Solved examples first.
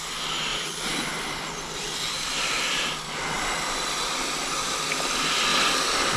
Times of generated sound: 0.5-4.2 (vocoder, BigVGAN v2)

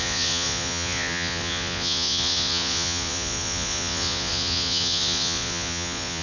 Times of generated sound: 0.0-6.2 (vocoder, Vocos)

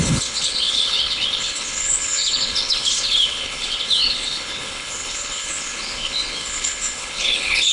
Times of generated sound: 0.0-7.7 (codec, HILCodec)

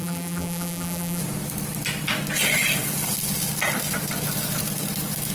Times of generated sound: 0.0-1.2 (vocoder, BigVGAN v2)

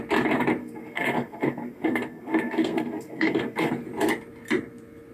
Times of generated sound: 0.6-3.7 (codec, SNAC)

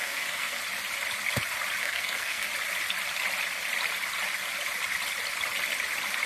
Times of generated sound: 0.0-0.6 (codec, SNAC); 1.8-2.5